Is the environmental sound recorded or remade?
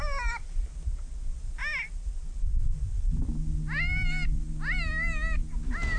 recorded